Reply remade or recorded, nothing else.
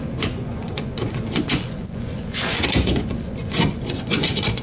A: remade